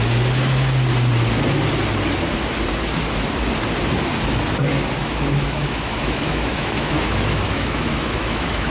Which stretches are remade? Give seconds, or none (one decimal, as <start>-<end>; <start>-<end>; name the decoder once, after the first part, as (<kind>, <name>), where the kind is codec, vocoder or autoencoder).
5.0-8.7 (autoencoder, DAC-VAE)